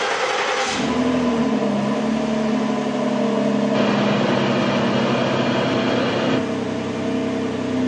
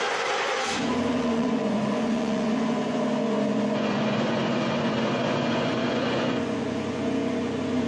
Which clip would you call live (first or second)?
first